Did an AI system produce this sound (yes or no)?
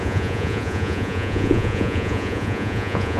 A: yes